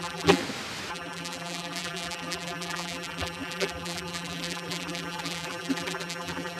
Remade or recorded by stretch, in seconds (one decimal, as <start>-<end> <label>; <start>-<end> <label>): 0.0-0.4 remade; 0.4-0.9 recorded; 0.9-6.6 remade